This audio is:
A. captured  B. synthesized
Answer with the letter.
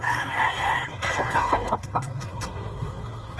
B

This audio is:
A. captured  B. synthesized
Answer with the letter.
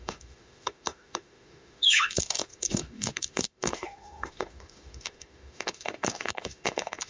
B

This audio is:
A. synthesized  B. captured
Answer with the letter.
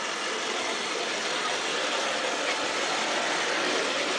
B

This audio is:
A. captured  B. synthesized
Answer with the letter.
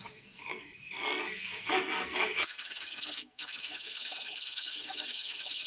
B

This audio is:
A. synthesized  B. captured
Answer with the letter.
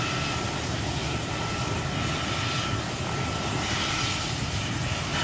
B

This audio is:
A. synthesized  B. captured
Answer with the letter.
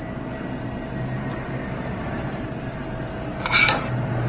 B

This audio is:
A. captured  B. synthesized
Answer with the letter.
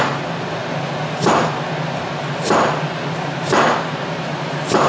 A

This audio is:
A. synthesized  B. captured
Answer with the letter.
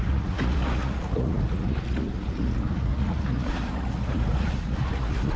A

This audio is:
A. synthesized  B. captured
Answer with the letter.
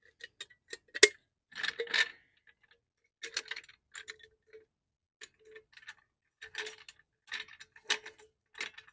B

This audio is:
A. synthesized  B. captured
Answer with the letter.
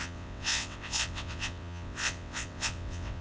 A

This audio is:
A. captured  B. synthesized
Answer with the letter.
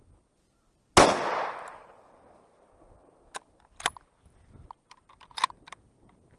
A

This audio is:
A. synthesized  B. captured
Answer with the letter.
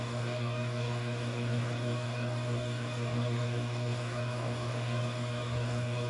A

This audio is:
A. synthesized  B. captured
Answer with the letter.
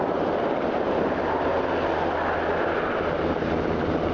B